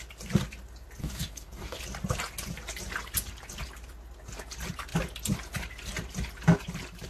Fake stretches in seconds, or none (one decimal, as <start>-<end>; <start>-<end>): 1.0-1.8